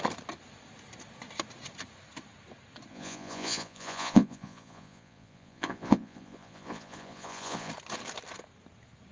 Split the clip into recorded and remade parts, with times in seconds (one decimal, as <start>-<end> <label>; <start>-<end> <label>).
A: 0.0-2.9 recorded; 2.9-7.7 remade; 7.7-9.1 recorded